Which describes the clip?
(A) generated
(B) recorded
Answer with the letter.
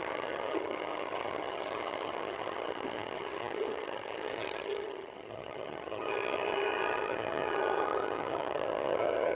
A